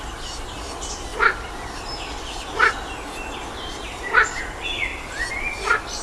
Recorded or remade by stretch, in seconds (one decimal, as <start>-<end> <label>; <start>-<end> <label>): 0.0-6.0 recorded